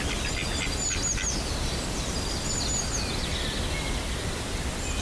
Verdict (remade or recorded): recorded